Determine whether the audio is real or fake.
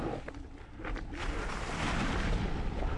real